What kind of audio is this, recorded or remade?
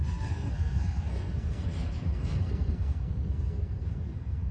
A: remade